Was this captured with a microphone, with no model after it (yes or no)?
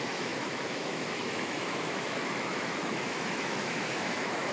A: no